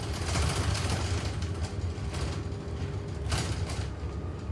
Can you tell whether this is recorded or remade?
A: recorded